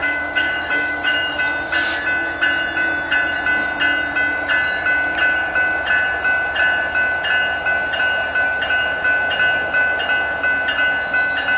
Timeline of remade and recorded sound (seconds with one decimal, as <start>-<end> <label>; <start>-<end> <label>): 0.0-1.4 remade; 1.4-11.6 recorded